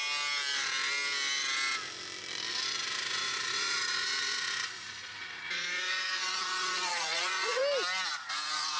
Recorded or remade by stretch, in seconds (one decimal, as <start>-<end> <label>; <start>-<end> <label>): 0.0-2.9 recorded; 2.9-7.6 remade; 7.6-8.1 recorded; 8.1-8.8 remade